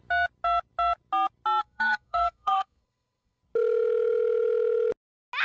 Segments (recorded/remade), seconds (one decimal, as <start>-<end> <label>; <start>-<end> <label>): 0.0-1.6 recorded; 1.6-3.4 remade; 3.4-5.4 recorded